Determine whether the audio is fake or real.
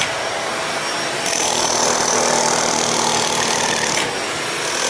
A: real